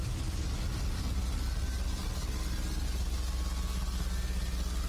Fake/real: real